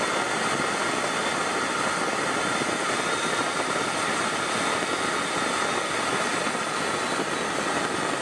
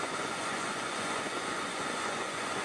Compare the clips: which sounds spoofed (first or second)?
second